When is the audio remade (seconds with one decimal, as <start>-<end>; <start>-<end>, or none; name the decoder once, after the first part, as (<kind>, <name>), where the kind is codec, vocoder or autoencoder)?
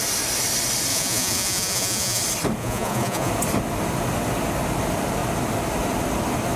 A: 0.9-2.2 (vocoder, Vocos); 2.6-3.3